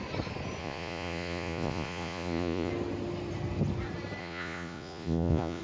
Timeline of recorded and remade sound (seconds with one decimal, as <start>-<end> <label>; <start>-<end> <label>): 0.0-0.6 recorded; 0.6-2.7 remade; 2.7-4.2 recorded; 4.2-5.6 remade